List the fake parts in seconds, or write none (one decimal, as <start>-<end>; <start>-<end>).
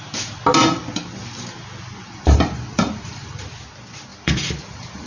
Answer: 2.0-3.5; 4.1-5.1